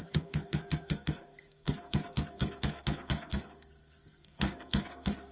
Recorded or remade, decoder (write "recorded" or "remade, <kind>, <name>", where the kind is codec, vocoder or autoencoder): remade, codec, SNAC